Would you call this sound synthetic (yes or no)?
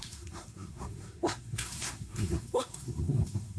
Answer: yes